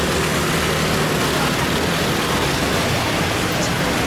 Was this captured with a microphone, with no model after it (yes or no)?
yes